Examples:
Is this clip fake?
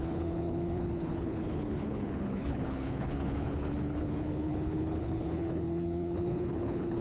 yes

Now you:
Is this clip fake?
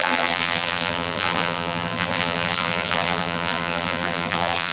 yes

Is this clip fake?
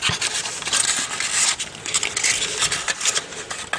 no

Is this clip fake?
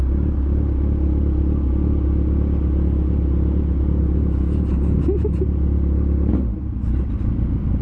no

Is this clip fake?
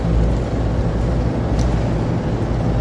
no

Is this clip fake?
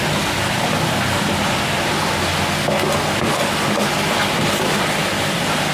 no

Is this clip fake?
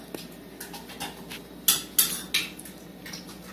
no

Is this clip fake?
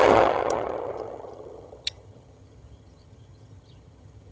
yes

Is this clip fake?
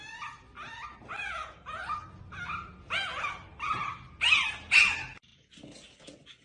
no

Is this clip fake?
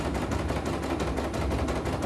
no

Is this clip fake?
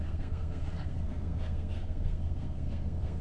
yes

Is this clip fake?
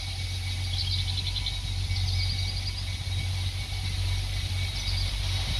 no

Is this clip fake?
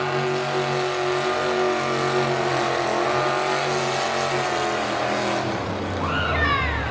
no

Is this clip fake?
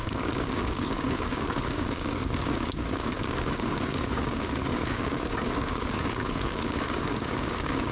yes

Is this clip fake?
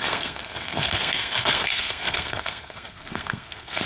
yes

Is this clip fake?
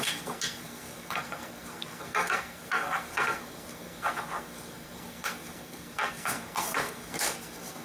yes